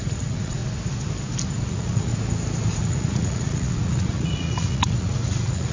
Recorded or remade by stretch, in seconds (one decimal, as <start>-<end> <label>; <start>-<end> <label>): 0.0-0.6 remade; 0.6-1.6 recorded; 1.6-2.1 remade; 2.1-2.7 recorded; 2.7-5.7 remade